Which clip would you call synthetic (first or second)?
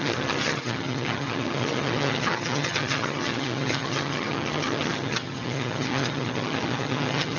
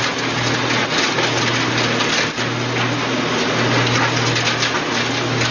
first